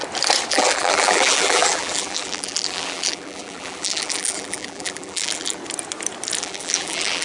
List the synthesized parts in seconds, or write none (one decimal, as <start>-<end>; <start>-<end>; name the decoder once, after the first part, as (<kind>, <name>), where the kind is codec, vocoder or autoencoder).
0.5-5.6 (vocoder, BigVGAN v2); 6.4-7.2